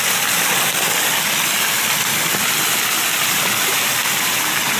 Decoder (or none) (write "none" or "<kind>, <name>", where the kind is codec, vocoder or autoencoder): none